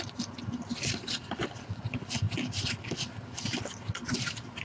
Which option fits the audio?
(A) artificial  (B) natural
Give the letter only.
B